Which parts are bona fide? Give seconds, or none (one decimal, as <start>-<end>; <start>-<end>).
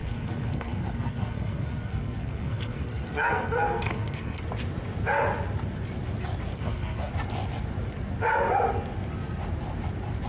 4.4-6.5; 7.1-10.3